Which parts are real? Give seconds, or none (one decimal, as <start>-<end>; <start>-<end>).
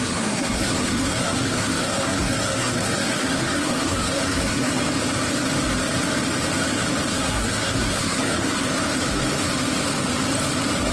4.7-7.1; 8.7-10.9